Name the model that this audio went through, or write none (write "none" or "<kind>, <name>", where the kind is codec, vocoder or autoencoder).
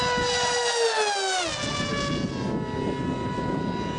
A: none